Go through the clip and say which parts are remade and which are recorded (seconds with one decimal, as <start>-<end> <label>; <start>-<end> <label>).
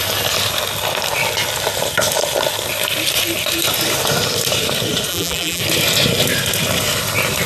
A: 0.0-5.1 recorded; 5.1-5.6 remade; 5.6-7.5 recorded